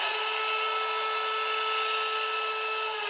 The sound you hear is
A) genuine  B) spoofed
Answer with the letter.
A